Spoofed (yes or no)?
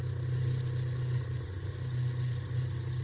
no